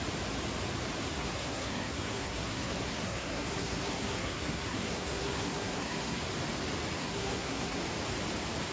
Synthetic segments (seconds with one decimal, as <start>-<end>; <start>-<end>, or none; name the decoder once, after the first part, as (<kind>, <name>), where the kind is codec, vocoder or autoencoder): 1.1-6.2 (codec, SNAC); 7.0-7.8